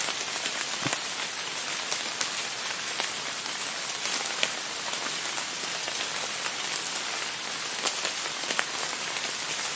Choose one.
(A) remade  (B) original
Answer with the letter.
B